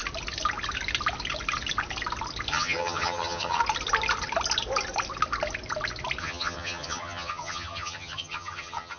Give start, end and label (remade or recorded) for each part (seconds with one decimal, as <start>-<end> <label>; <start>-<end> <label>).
0.0-2.5 recorded; 2.5-3.6 remade; 3.6-6.2 recorded; 6.2-9.0 remade